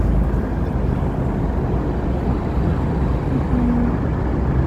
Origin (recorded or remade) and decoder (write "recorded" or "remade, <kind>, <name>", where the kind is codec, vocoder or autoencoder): recorded